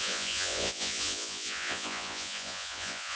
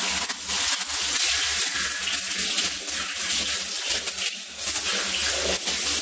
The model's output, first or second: first